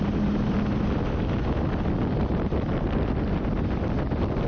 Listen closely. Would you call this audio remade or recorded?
recorded